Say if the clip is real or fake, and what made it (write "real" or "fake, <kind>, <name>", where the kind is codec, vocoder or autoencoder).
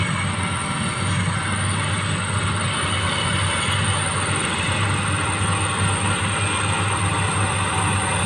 real